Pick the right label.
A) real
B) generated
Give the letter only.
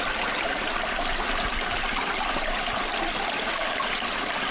A